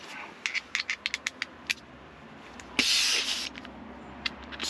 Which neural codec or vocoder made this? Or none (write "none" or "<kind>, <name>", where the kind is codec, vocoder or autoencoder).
none